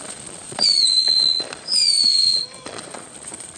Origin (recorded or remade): remade